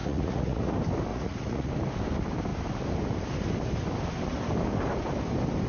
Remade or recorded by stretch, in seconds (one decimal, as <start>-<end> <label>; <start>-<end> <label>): 0.0-0.7 remade; 0.7-1.1 recorded; 1.1-1.7 remade; 1.7-5.7 recorded